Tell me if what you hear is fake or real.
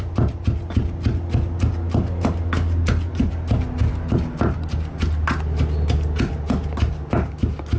real